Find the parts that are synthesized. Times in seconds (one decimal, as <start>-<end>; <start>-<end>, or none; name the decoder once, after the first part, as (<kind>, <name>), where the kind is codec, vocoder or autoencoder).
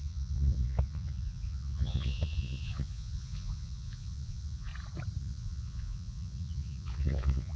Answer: 0.0-4.7 (vocoder, Vocos); 5.2-7.6